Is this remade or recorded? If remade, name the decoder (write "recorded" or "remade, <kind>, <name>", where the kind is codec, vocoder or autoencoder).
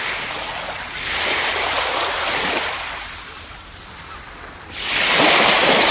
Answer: recorded